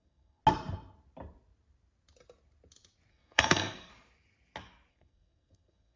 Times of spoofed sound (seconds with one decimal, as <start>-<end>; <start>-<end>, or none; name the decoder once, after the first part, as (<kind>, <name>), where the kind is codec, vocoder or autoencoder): 0.0-0.4 (codec, SNAC); 3.1-3.9; 4.9-6.0